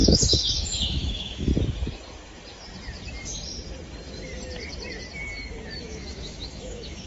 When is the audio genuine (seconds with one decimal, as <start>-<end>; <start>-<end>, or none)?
1.5-5.8